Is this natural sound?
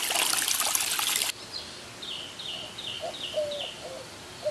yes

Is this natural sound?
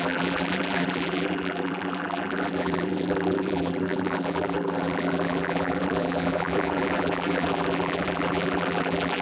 no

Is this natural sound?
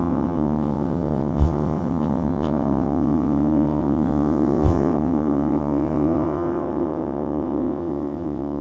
no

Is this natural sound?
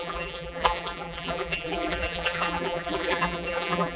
no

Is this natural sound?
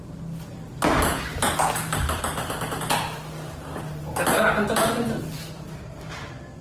yes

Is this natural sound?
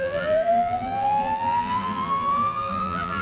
no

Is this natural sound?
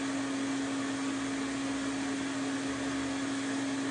yes